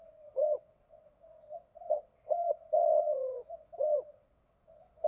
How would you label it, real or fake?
fake